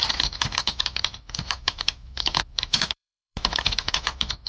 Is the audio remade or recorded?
remade